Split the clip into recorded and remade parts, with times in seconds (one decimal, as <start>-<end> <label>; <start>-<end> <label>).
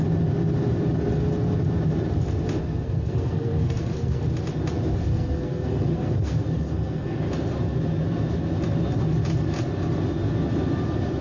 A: 0.0-2.6 recorded; 2.6-4.2 remade; 4.2-5.1 recorded; 5.1-7.2 remade; 7.2-11.2 recorded